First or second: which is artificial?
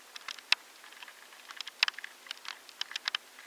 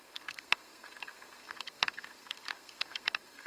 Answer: second